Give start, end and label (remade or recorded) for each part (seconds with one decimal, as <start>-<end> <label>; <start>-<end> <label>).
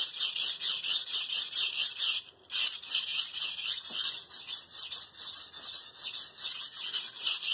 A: 0.0-7.5 recorded